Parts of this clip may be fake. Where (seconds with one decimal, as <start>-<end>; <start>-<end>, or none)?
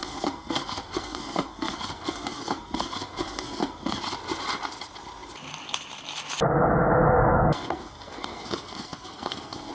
0.0-4.0; 7.3-9.7